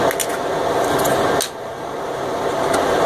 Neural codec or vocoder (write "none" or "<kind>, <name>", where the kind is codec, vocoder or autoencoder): none